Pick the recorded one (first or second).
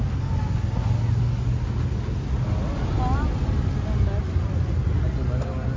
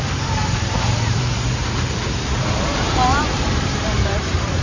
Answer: first